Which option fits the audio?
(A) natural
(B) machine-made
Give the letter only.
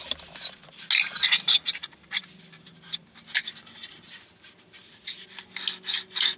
A